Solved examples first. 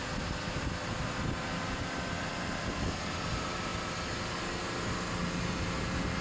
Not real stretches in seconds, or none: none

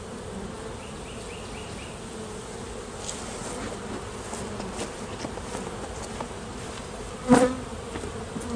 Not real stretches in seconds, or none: none

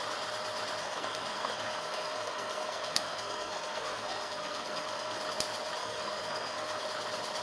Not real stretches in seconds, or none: 0.8-5.2 (codec, SNAC); 5.8-6.8

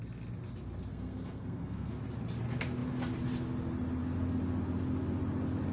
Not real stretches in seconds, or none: 0.9-1.9 (codec, SNAC)